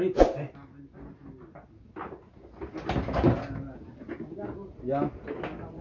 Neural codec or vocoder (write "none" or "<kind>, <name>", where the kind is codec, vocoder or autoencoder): none